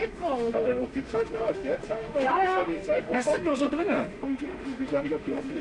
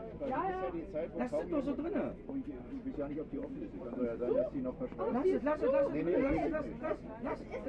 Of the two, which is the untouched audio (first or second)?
second